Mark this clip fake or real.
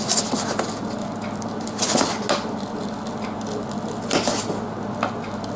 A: real